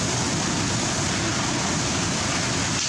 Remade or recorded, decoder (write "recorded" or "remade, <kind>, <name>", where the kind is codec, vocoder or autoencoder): recorded